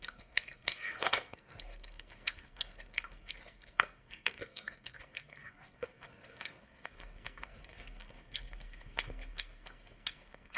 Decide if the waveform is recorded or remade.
remade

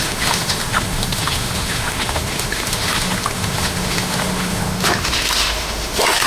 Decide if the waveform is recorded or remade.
remade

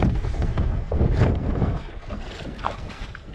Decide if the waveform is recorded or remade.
remade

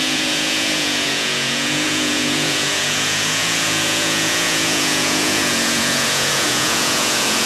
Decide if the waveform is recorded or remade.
remade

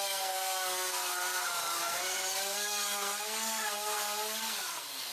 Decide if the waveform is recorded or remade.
remade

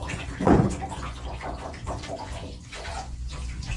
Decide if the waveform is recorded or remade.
remade